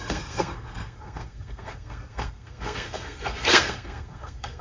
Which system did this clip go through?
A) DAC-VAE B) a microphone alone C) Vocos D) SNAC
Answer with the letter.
D